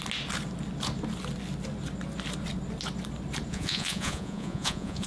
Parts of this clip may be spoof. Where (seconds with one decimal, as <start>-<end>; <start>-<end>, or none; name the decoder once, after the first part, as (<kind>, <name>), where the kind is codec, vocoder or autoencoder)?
3.5-5.1 (vocoder, Vocos)